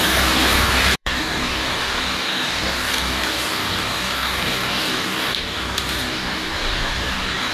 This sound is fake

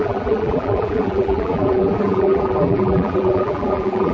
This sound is fake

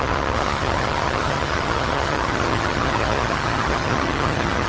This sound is fake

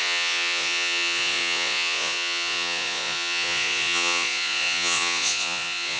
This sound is fake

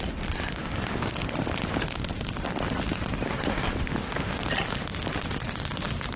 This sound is real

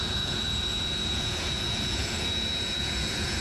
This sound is fake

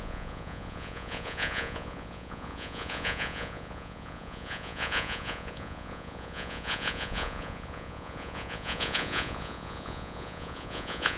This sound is fake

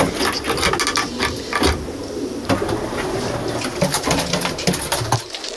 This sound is real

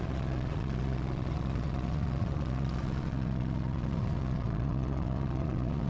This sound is fake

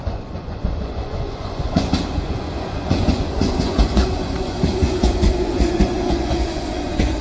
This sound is fake